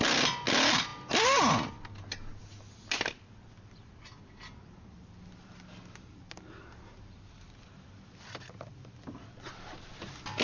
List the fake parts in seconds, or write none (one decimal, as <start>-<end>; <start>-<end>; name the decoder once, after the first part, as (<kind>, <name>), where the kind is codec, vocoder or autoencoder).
none